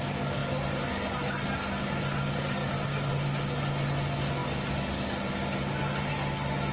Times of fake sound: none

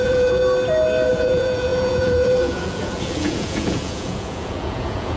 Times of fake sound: 0.0-0.4 (vocoder, Vocos); 1.1-5.2

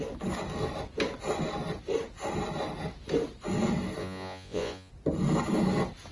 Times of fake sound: 4.0-4.9 (vocoder, Vocos)

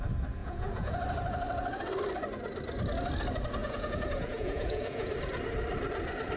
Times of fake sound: 0.4-0.9 (vocoder, Vocos); 3.6-5.1

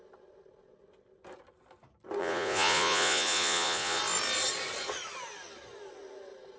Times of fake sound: 2.2-4.0 (vocoder, Vocos)

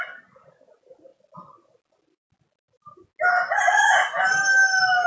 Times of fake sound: none

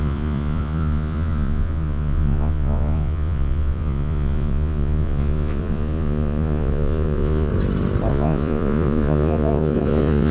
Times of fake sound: 0.0-7.5 (vocoder, Vocos); 8.1-10.3

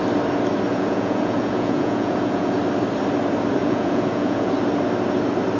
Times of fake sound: 0.7-2.6 (vocoder, Vocos); 3.6-4.5